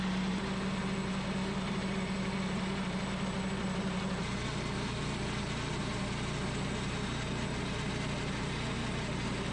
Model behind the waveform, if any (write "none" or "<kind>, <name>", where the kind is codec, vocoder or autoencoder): none